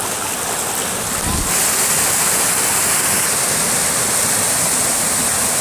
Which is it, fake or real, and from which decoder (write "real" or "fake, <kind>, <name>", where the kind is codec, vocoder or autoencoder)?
real